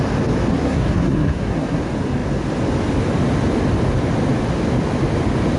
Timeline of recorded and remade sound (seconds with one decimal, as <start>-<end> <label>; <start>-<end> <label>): 0.0-0.5 recorded; 0.5-1.8 remade; 1.8-5.6 recorded